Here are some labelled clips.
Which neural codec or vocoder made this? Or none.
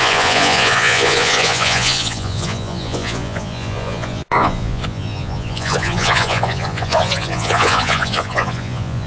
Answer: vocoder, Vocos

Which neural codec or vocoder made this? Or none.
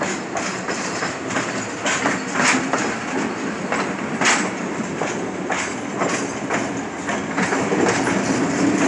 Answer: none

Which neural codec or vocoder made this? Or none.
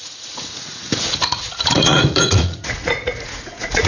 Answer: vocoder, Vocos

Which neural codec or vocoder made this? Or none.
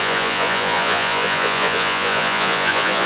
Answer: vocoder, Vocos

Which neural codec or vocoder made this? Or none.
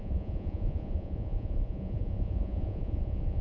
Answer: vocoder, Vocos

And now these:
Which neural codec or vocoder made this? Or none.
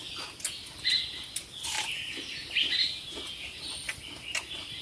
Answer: none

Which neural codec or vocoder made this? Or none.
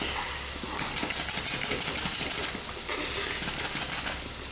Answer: none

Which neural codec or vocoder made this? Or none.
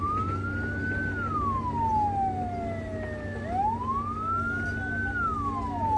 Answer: none